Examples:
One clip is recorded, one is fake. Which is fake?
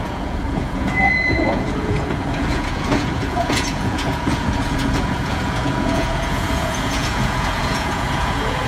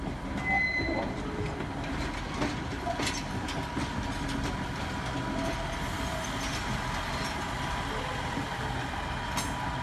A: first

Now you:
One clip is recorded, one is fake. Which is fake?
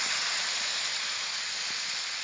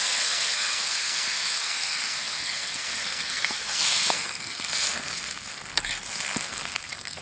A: second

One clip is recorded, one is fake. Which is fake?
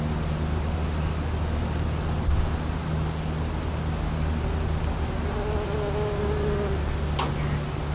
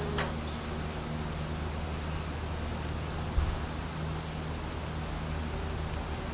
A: first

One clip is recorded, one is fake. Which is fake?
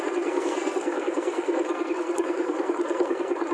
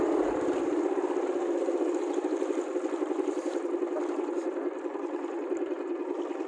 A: first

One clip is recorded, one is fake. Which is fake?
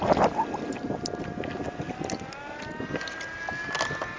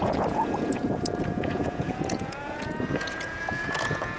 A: second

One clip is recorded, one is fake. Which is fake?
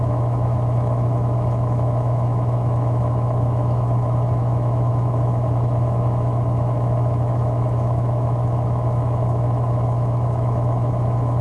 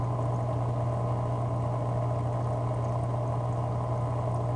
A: first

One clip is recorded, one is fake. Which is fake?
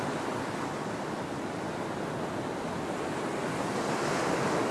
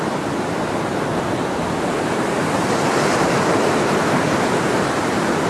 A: second